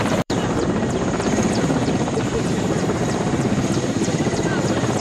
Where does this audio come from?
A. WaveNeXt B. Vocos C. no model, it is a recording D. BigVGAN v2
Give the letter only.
D